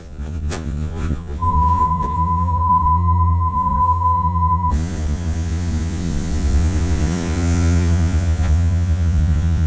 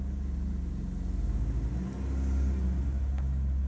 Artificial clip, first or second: first